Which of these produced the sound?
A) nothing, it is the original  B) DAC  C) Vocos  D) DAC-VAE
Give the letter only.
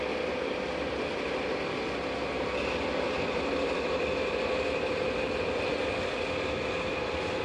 A